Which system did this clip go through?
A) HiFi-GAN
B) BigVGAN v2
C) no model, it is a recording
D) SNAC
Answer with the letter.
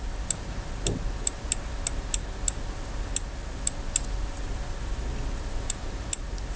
C